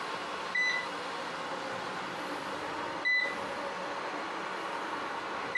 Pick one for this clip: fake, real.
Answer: real